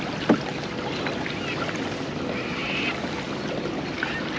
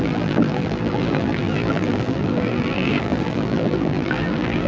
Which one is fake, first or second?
second